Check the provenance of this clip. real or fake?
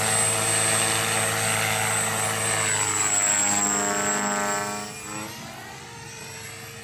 real